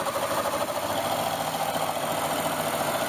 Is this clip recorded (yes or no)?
yes